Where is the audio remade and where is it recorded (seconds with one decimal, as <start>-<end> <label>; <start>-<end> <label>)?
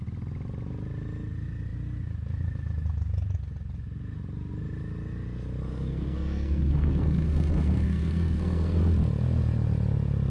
0.0-5.7 recorded; 5.7-8.8 remade; 8.8-10.3 recorded